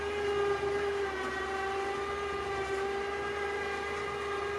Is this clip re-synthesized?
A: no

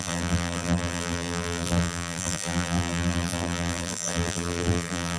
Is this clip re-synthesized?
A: yes